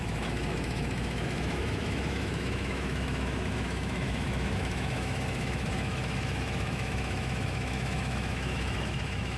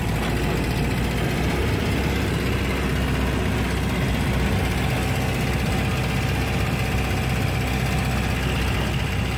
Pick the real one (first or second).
second